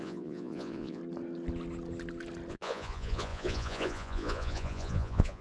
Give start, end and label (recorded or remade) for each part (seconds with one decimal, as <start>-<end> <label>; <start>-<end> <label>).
0.0-1.0 remade; 1.0-2.5 recorded; 2.5-5.4 remade